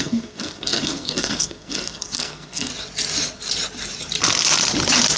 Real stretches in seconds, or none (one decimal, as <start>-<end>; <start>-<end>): 2.7-5.2